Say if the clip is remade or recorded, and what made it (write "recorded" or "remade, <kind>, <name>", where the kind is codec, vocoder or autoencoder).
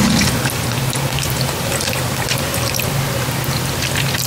recorded